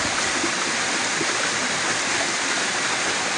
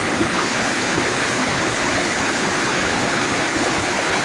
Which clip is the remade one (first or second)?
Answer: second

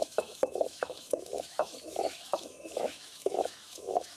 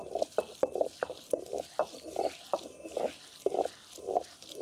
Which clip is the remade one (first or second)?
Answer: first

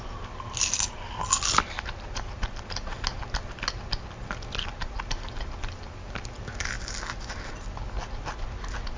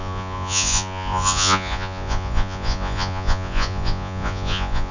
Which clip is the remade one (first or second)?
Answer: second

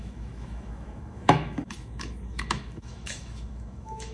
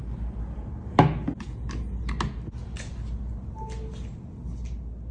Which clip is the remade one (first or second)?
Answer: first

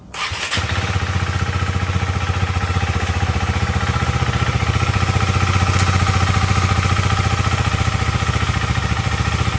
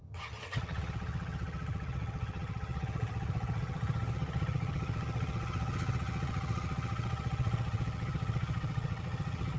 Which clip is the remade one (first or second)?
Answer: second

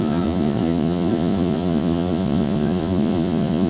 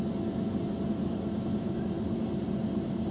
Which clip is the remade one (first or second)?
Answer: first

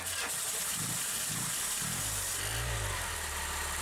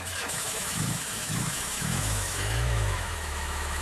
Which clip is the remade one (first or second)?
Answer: second